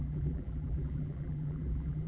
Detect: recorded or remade remade